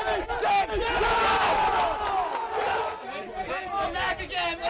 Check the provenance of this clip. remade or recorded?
recorded